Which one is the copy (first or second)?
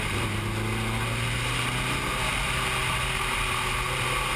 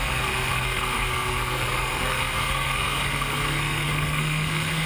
second